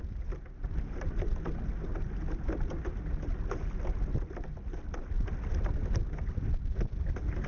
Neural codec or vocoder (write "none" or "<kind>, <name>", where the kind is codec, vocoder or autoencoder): none